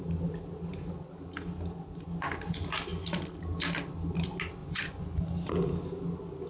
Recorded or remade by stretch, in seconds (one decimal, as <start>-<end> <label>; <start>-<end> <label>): 0.0-4.6 recorded; 4.6-5.2 remade; 5.2-6.5 recorded